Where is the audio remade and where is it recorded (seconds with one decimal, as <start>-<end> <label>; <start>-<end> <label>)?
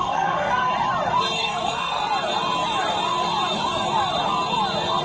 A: 0.0-0.7 remade; 0.7-1.4 recorded; 1.4-2.0 remade; 2.0-5.0 recorded